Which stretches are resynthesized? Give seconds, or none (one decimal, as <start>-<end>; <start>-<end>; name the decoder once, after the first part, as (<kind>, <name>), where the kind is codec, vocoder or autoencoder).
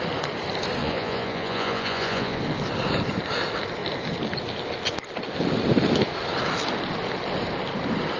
0.8-2.4 (vocoder, Vocos)